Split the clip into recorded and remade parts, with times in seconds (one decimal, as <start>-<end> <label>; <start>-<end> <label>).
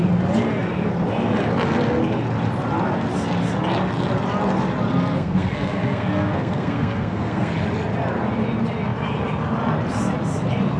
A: 0.0-5.1 recorded; 5.1-7.5 remade; 7.5-10.8 recorded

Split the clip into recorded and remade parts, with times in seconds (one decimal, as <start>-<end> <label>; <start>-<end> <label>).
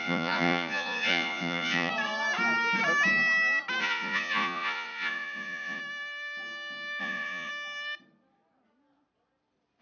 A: 0.0-1.9 remade; 1.9-3.8 recorded; 3.8-5.8 remade; 5.8-7.0 recorded; 7.0-7.5 remade; 7.5-9.8 recorded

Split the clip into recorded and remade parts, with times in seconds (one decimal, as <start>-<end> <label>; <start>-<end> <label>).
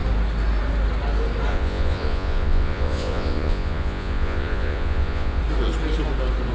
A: 0.0-1.5 recorded; 1.5-5.4 remade; 5.4-6.5 recorded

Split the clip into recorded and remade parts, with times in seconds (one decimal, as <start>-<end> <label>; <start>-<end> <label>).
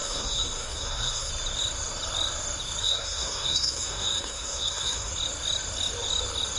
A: 0.0-1.3 remade; 1.3-2.8 recorded; 2.8-5.1 remade; 5.1-6.6 recorded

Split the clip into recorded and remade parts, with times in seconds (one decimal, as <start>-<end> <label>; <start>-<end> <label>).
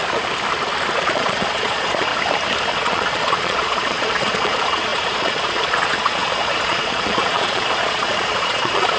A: 0.0-1.0 recorded; 1.0-2.1 remade; 2.1-2.7 recorded; 2.7-9.0 remade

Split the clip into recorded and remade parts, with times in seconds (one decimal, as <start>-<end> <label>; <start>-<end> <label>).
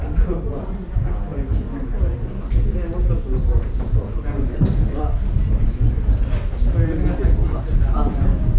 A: 0.0-1.3 remade; 1.3-3.1 recorded; 3.1-8.6 remade